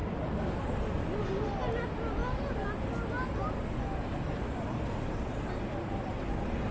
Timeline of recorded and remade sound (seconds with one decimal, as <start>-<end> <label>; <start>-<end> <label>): 0.0-6.7 recorded